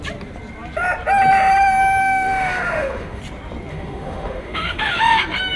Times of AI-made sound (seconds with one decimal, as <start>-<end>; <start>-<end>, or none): 2.0-3.2; 3.7-5.0